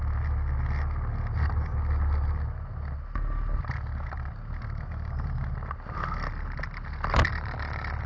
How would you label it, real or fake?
real